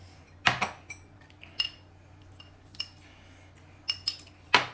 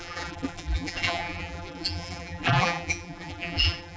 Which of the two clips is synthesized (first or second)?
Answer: second